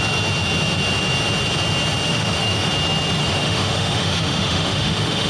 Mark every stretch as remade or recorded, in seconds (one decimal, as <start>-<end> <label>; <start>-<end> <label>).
0.0-2.1 recorded; 2.1-2.7 remade; 2.7-3.2 recorded; 3.2-5.3 remade